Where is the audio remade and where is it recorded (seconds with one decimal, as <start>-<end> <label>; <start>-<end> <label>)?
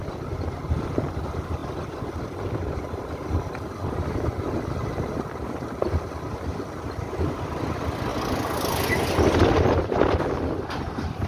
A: 0.0-11.3 recorded